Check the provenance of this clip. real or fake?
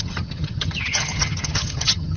fake